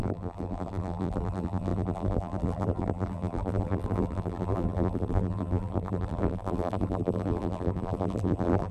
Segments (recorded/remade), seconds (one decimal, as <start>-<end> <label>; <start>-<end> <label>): 0.0-8.7 remade